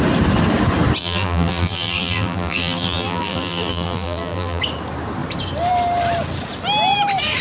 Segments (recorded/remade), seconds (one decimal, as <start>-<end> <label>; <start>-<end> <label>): 0.0-1.0 recorded; 1.0-4.6 remade; 4.6-7.4 recorded

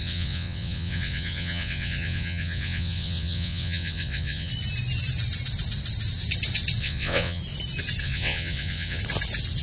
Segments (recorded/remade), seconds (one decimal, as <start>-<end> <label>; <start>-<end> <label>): 0.0-4.5 remade; 4.5-6.8 recorded; 6.8-7.4 remade; 7.4-8.0 recorded; 8.0-9.0 remade; 9.0-9.6 recorded

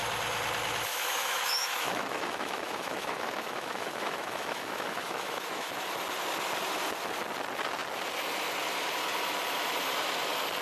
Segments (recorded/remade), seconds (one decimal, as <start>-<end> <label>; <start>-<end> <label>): 0.0-0.9 recorded; 0.9-5.7 remade; 5.7-10.6 recorded

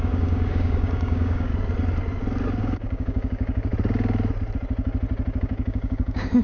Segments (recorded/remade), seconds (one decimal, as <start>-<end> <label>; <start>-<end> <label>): 0.0-1.5 remade; 1.5-2.6 recorded; 2.6-3.7 remade; 3.7-5.4 recorded; 5.4-6.4 remade

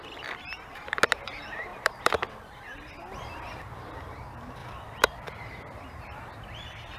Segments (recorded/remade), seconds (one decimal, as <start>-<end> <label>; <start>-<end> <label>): 0.0-1.7 recorded; 1.7-4.1 remade; 4.1-4.6 recorded; 4.6-7.0 remade

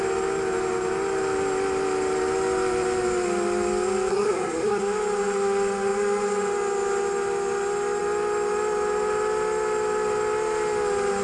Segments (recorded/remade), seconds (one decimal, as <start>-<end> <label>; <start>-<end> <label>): 0.0-4.1 recorded; 4.1-4.8 remade; 4.8-11.2 recorded